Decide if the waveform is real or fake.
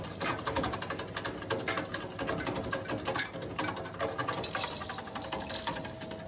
real